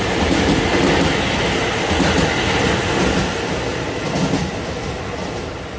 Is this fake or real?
real